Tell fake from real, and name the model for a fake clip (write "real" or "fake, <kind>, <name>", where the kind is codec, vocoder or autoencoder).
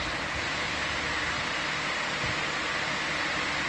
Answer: real